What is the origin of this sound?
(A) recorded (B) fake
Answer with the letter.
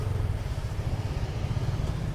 A